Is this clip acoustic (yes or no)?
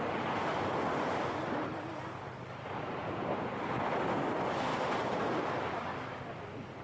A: yes